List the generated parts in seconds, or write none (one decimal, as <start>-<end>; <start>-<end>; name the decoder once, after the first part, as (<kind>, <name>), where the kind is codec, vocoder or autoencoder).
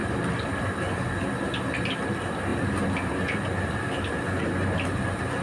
0.0-0.6 (vocoder, BigVGAN v2)